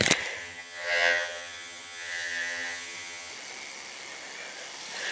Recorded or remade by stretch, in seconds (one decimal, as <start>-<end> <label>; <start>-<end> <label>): 0.0-0.4 recorded; 0.4-3.3 remade; 3.3-5.1 recorded